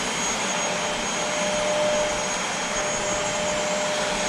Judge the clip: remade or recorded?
recorded